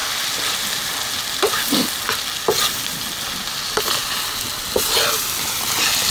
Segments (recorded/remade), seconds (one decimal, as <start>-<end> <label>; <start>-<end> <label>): 0.0-4.0 recorded; 4.0-4.5 remade; 4.5-6.1 recorded